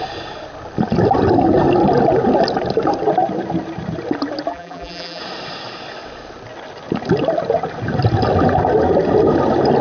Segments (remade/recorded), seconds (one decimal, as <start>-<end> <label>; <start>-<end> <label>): 0.0-4.5 recorded; 4.5-5.2 remade; 5.2-9.8 recorded